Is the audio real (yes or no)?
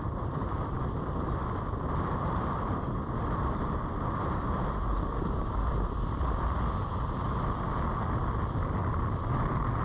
no